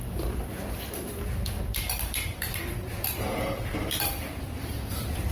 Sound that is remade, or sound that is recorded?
remade